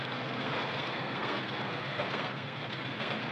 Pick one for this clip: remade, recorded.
remade